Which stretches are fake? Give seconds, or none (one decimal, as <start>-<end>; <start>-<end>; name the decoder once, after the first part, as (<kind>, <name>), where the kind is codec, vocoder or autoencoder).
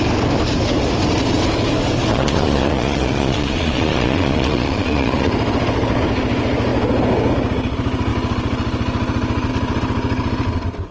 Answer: 2.1-5.3 (vocoder, Vocos)